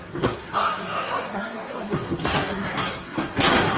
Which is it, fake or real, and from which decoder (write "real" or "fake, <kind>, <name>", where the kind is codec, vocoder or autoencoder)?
fake, codec, SNAC